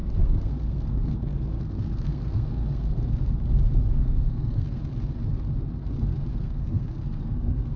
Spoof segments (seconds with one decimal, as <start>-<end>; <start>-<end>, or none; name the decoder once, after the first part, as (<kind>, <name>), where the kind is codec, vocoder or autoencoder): 0.0-3.1 (codec, SNAC); 4.0-4.8; 6.3-7.8